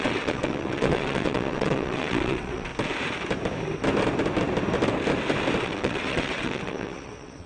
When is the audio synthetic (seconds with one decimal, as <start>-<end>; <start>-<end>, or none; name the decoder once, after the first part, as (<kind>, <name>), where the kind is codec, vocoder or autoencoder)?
0.0-2.7 (vocoder, WaveNeXt); 5.6-7.5

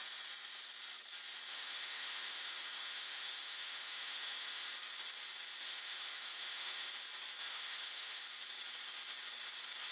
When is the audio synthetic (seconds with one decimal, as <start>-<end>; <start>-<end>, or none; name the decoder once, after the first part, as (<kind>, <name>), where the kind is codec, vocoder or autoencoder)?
1.5-4.7 (autoencoder, DAC-VAE); 5.6-6.9; 7.4-8.2

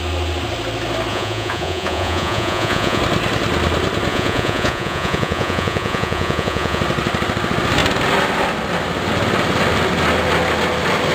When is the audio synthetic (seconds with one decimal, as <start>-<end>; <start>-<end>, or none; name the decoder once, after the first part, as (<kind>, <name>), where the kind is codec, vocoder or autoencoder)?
1.1-3.0 (vocoder, Vocos); 4.1-6.8

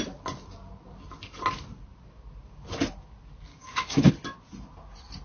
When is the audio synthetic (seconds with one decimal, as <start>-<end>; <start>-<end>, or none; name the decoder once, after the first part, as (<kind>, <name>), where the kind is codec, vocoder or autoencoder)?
3.5-4.1 (codec, DAC)

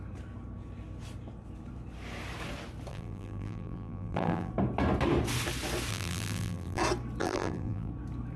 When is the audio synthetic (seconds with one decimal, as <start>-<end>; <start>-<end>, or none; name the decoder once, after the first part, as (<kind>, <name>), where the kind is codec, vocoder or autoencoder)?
2.9-4.5 (vocoder, BigVGAN v2); 5.9-6.8; 7.2-7.9